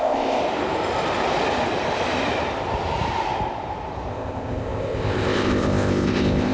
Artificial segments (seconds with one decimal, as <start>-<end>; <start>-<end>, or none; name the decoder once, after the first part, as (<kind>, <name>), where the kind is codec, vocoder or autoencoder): 0.0-0.4 (codec, ZipCodec); 4.1-6.5